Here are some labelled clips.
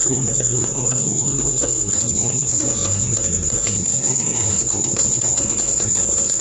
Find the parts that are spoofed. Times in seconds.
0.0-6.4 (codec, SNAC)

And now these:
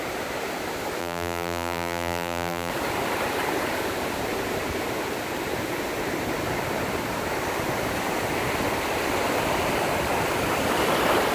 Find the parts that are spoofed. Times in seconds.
1.0-2.7 (vocoder, BigVGAN v2)